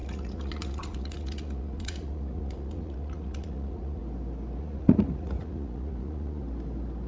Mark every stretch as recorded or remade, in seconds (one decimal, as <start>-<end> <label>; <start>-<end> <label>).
0.0-4.0 remade; 4.0-4.6 recorded; 4.6-6.4 remade; 6.4-7.1 recorded